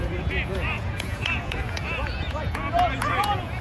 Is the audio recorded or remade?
remade